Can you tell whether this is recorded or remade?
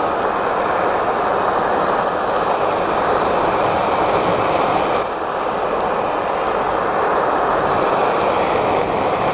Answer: recorded